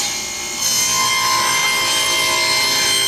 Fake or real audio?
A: real